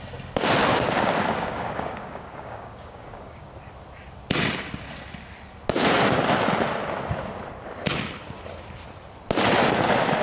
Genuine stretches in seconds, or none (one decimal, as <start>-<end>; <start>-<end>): 0.0-0.7; 3.5-10.2